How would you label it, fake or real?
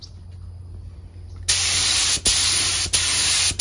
real